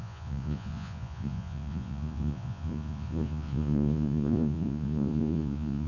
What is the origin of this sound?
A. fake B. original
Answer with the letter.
A